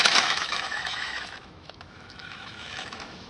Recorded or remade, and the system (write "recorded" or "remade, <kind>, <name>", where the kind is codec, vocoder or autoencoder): remade, autoencoder, DAC-VAE